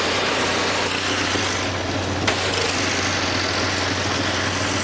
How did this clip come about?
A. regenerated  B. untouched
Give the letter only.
B